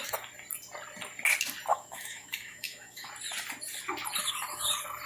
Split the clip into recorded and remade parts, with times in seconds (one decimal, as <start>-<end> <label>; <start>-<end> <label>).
0.0-1.7 recorded; 1.7-3.1 remade; 3.1-5.1 recorded